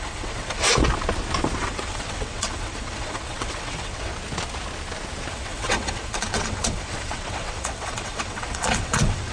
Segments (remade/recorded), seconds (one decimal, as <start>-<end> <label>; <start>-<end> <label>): 0.0-0.7 remade; 0.7-1.6 recorded; 1.6-4.1 remade; 4.1-5.3 recorded; 5.3-9.3 remade